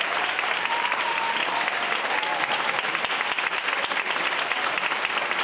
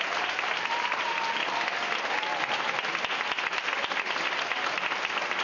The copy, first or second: first